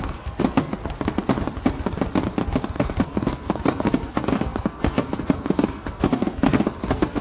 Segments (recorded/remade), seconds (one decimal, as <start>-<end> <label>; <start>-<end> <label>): 0.0-0.8 remade; 0.8-2.7 recorded; 2.7-7.2 remade